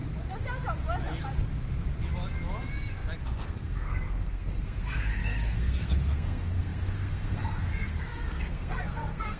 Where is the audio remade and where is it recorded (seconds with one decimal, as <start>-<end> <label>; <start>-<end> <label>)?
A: 0.0-3.2 recorded; 3.2-9.4 remade